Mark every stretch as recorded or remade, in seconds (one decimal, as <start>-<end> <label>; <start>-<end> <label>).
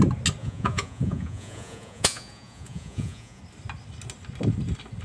0.0-0.4 recorded; 0.4-3.4 remade; 3.4-5.0 recorded